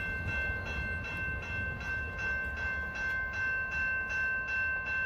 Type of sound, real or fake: real